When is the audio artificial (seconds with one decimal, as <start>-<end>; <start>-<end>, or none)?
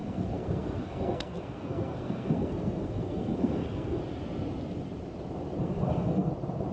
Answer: 0.0-4.0; 5.6-6.3